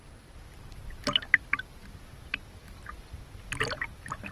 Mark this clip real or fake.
real